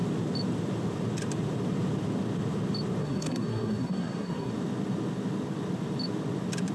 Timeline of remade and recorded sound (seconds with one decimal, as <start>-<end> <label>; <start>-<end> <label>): 0.0-3.0 recorded; 3.0-4.5 remade; 4.5-6.7 recorded